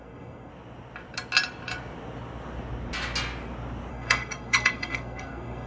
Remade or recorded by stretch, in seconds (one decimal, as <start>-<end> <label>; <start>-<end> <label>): 0.0-0.5 remade; 0.5-3.9 recorded; 3.9-5.7 remade